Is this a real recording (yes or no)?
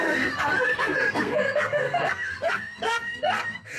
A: no